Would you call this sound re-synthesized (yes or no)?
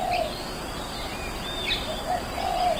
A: no